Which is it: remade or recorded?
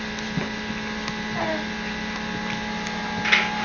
recorded